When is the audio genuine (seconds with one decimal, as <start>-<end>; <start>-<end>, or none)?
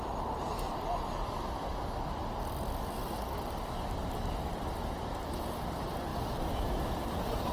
0.0-6.1; 6.9-7.5